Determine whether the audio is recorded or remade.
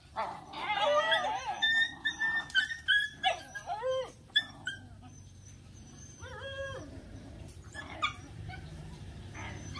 remade